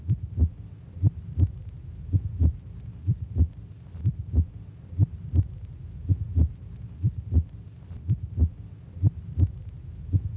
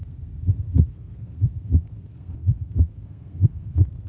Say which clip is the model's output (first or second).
second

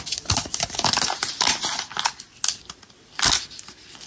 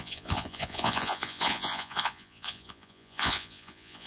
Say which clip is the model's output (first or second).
second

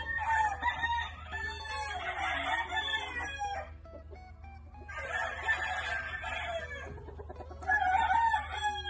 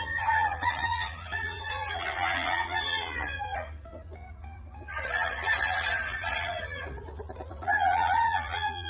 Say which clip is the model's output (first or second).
second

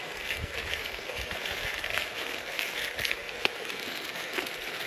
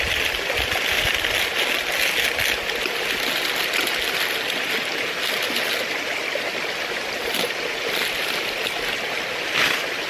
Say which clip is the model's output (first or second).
first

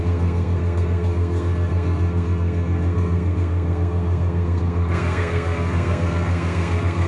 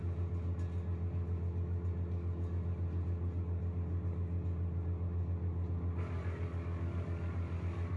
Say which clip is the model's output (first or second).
first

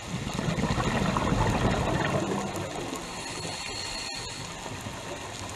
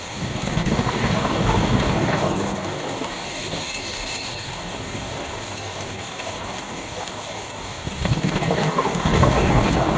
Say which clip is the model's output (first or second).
second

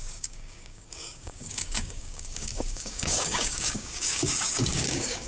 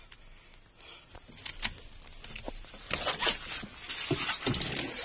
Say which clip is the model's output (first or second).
first